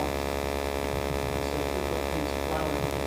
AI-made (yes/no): no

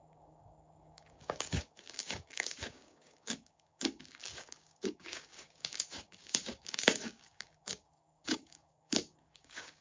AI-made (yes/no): yes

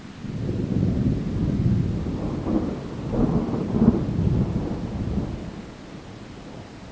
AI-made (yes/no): no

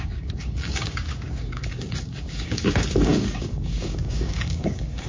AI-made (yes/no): yes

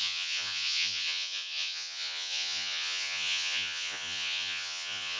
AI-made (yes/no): yes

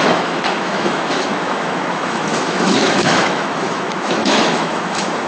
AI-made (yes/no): yes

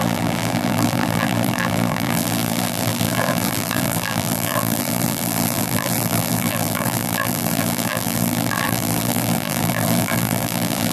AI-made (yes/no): yes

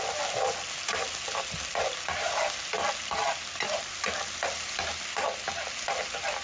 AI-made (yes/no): no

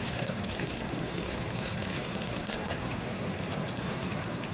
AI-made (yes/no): yes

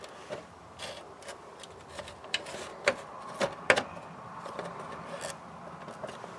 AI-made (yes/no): no